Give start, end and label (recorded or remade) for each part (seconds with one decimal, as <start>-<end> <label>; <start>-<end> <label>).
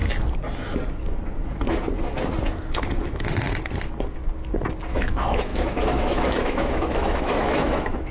0.0-4.9 recorded; 4.9-8.1 remade